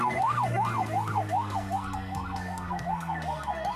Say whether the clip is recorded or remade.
remade